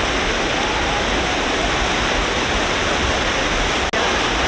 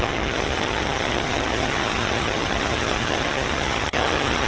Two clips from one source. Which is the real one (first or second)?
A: first